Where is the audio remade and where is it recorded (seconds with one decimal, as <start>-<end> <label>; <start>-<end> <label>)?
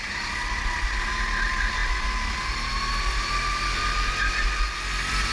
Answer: 0.0-5.3 recorded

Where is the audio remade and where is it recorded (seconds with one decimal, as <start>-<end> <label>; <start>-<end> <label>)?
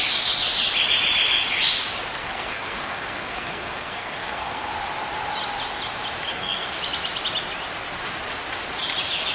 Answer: 0.0-2.2 recorded; 2.2-4.7 remade; 4.7-6.3 recorded; 6.3-6.8 remade; 6.8-9.3 recorded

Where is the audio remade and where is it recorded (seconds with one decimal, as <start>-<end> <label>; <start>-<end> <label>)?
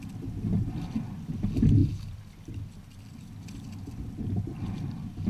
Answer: 0.0-5.3 recorded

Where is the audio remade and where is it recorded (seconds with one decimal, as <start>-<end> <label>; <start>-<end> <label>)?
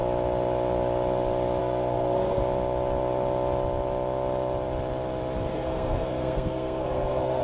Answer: 0.0-1.6 recorded; 1.6-2.4 remade; 2.4-5.5 recorded; 5.5-7.4 remade